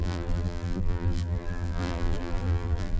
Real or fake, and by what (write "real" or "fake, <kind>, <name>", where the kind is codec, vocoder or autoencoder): fake, vocoder, BigVGAN v2